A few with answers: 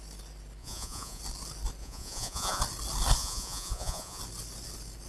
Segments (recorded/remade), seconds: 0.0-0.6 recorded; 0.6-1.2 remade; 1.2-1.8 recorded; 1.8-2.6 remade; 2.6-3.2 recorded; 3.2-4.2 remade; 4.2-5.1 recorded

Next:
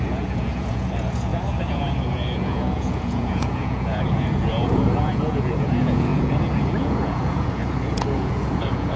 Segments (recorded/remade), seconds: 0.0-9.0 remade

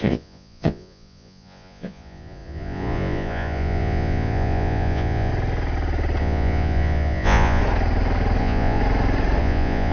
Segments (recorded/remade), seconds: 0.0-5.3 remade; 5.3-6.2 recorded; 6.2-7.6 remade; 7.6-8.4 recorded; 8.4-8.8 remade; 8.8-9.4 recorded; 9.4-9.9 remade